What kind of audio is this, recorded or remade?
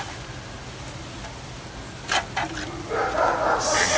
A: recorded